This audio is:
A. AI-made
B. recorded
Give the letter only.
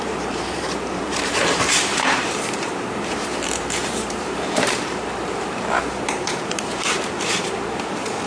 A